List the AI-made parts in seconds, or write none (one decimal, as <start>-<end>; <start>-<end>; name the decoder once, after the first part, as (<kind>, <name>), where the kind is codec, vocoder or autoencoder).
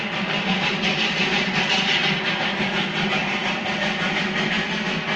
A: 3.4-4.2 (vocoder, BigVGAN v2)